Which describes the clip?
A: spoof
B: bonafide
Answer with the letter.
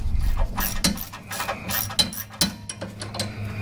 B